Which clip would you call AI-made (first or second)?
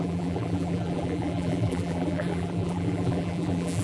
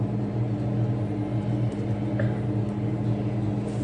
first